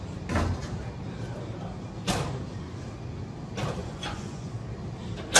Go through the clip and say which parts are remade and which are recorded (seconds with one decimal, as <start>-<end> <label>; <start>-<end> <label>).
0.0-3.8 recorded; 3.8-4.5 remade; 4.5-5.4 recorded